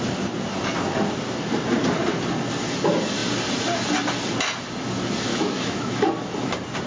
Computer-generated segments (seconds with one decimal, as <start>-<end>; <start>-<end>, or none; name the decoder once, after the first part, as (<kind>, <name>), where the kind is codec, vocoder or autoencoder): 5.3-6.1 (autoencoder, DAC-VAE)